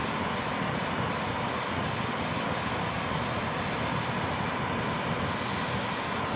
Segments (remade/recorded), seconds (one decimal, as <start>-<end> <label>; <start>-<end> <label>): 0.0-6.4 recorded